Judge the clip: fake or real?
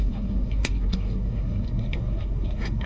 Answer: fake